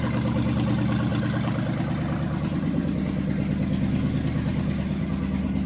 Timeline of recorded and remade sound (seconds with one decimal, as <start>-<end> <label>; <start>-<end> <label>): 0.0-5.7 recorded